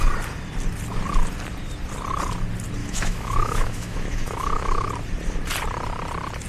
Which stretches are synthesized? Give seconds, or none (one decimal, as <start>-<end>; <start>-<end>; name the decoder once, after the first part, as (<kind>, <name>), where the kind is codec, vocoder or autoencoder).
2.8-4.9 (autoencoder, DAC-VAE)

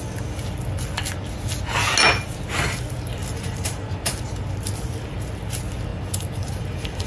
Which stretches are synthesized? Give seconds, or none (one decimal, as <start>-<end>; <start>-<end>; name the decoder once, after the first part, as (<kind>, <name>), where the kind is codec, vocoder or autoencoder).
3.2-4.2 (vocoder, BigVGAN v2); 5.9-7.1

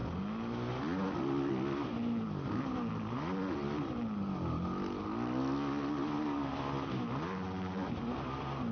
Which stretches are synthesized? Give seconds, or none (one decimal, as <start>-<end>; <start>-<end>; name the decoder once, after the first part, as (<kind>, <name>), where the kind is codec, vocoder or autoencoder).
none

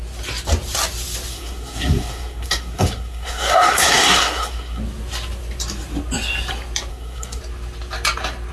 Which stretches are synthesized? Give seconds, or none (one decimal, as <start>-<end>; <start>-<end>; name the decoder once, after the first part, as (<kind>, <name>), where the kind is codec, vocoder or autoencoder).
1.3-4.8 (codec, SNAC); 6.9-7.4